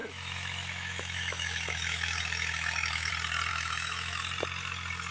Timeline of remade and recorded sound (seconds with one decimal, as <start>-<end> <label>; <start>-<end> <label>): 0.0-3.1 remade; 3.1-3.5 recorded; 3.5-4.2 remade; 4.2-5.1 recorded